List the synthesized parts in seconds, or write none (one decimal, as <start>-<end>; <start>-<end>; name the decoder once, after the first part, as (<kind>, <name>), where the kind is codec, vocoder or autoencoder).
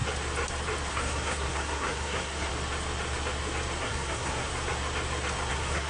0.9-2.5 (codec, SNAC); 3.8-4.5; 5.5-5.9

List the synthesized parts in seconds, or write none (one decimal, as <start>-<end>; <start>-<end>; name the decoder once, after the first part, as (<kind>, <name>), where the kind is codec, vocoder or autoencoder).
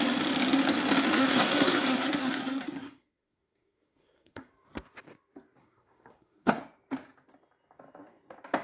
1.2-4.5 (codec, SNAC); 5.6-6.6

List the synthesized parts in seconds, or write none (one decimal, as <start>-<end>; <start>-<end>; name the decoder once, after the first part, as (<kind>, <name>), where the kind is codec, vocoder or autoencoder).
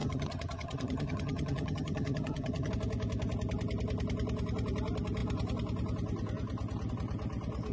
0.0-2.7 (vocoder, HiFi-GAN)